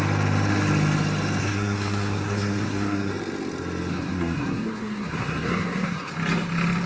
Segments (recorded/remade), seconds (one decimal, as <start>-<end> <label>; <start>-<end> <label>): 0.0-1.4 recorded; 1.4-3.1 remade; 3.1-3.9 recorded; 3.9-6.1 remade; 6.1-6.9 recorded